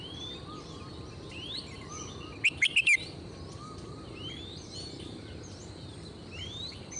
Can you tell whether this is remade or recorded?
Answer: recorded